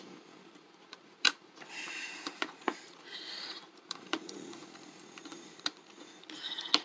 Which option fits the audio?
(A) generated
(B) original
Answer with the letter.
A